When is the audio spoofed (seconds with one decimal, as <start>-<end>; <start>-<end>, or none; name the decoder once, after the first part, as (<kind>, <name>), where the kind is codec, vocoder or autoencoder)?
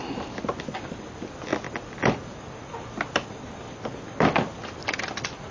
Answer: none